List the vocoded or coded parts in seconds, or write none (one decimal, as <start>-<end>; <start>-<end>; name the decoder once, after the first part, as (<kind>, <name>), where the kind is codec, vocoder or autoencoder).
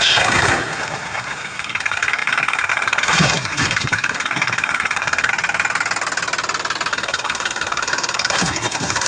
0.0-5.3 (codec, SNAC); 6.9-9.1